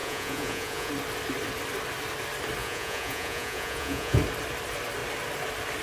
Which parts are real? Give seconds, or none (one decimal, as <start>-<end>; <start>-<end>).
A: 0.9-2.6; 4.2-5.8